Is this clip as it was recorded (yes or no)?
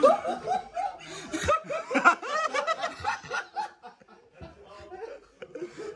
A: yes